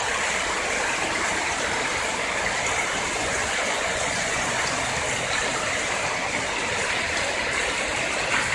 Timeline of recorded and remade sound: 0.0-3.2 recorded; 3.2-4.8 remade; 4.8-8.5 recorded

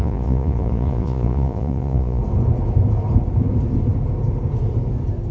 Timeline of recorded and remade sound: 0.0-2.2 remade; 2.2-5.3 recorded